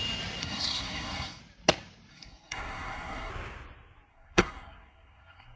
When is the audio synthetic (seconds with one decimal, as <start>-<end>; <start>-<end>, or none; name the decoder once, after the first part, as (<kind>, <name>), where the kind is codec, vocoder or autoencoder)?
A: 0.4-1.4 (codec, SNAC); 2.1-3.3; 4.1-5.6